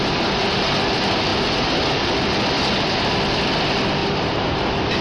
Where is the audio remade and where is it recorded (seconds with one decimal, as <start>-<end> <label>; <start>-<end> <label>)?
0.0-4.0 recorded; 4.0-4.6 remade; 4.6-5.0 recorded